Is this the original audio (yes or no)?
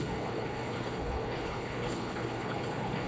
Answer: no